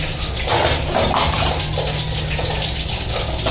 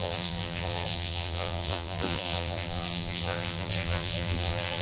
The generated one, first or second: second